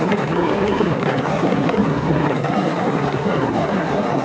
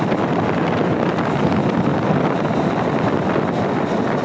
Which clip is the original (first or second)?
second